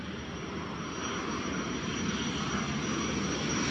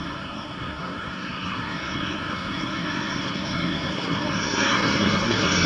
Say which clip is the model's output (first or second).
second